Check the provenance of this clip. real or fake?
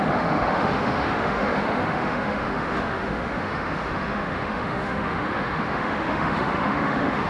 fake